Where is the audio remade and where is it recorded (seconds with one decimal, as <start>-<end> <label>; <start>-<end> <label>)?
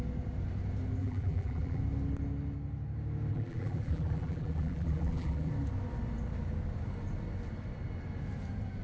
0.0-1.0 recorded; 1.0-1.8 remade; 1.8-3.3 recorded; 3.3-5.5 remade; 5.5-8.8 recorded